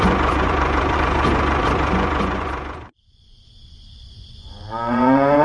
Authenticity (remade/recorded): remade